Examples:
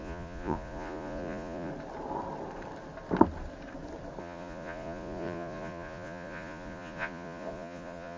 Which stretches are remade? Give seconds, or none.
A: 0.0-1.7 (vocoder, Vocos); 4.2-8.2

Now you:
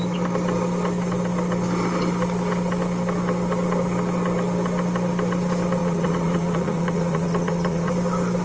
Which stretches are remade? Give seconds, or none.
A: 5.8-7.9 (vocoder, Vocos)

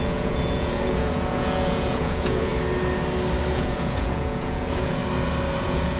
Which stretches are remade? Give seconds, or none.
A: 0.0-2.5 (vocoder, Vocos); 3.5-5.0; 5.6-6.0

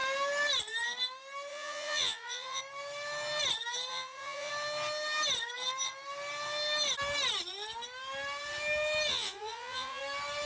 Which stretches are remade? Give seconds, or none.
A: 1.5-2.6 (vocoder, Vocos); 3.9-4.5; 9.1-10.0